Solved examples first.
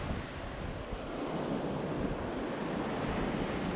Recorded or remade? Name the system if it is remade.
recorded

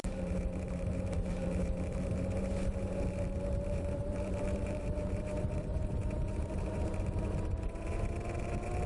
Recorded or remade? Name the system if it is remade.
remade, vocoder, BigVGAN v2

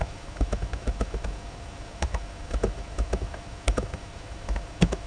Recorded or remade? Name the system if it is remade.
remade, autoencoder, DAC-VAE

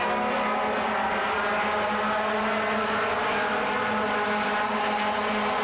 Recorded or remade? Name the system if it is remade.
recorded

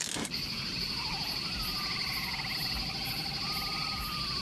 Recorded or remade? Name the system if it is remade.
recorded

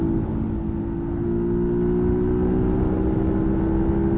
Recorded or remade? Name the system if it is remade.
recorded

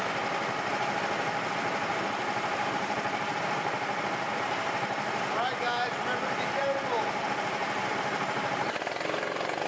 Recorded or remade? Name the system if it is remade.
remade, vocoder, BigVGAN v2